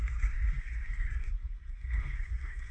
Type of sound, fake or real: fake